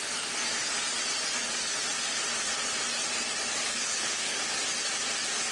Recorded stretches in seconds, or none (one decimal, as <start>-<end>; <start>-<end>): 0.0-3.6; 4.4-5.5